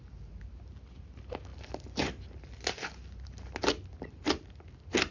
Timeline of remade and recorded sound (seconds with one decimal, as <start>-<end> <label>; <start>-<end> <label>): 0.0-5.1 recorded